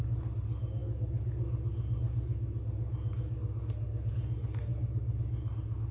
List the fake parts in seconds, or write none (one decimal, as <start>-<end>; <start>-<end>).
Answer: none